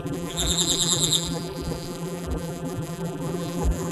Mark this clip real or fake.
fake